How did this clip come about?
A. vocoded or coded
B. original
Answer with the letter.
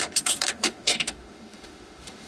A